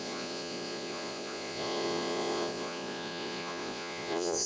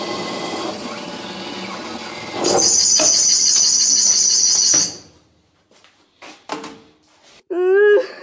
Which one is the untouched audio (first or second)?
second